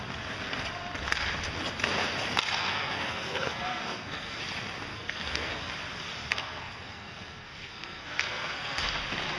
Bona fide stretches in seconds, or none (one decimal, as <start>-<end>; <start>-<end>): 0.0-2.6; 4.4-4.9; 5.7-6.3; 8.8-9.4